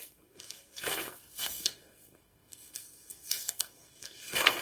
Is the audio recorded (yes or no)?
no